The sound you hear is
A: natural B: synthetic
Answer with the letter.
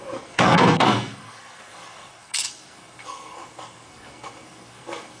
B